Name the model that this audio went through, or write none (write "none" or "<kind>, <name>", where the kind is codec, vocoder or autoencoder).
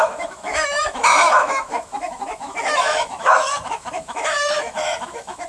autoencoder, DAC-VAE